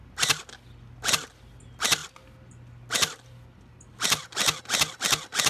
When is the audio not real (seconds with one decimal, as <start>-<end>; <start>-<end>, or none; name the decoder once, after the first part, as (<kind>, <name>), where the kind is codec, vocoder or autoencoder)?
none